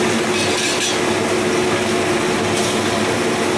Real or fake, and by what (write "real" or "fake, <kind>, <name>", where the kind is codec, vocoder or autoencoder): real